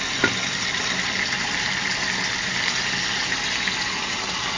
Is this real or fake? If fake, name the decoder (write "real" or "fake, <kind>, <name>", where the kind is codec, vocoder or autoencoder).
real